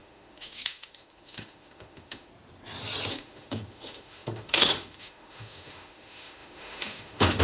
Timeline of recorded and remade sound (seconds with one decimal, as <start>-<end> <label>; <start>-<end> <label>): 0.0-2.3 remade; 2.3-3.1 recorded; 3.1-7.4 remade